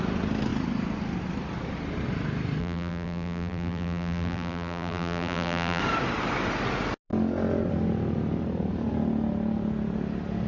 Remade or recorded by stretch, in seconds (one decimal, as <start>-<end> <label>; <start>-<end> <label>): 0.0-2.6 recorded; 2.6-5.8 remade; 5.8-10.5 recorded

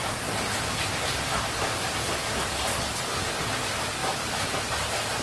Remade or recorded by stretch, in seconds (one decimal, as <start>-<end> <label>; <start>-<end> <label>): 0.0-2.7 recorded; 2.7-3.4 remade; 3.4-4.0 recorded; 4.0-4.6 remade; 4.6-5.2 recorded

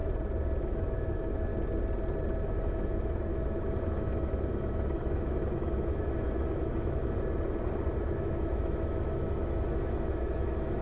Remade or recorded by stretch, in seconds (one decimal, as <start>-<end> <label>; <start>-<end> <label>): 0.0-0.6 recorded; 0.6-1.5 remade; 1.5-2.4 recorded; 2.4-7.0 remade; 7.0-8.0 recorded; 8.0-10.8 remade